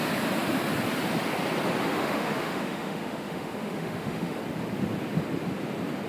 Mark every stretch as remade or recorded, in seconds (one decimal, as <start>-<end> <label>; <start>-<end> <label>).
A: 0.0-1.9 recorded; 1.9-4.4 remade; 4.4-6.1 recorded